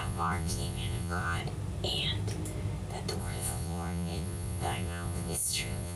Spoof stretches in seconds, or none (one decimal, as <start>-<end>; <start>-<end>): 0.0-1.4; 3.2-6.0